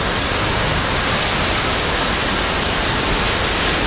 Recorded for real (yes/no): yes